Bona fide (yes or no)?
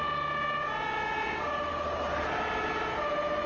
yes